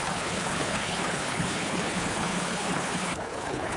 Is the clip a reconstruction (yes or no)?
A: yes